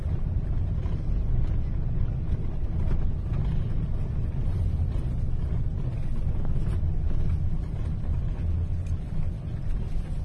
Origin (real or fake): real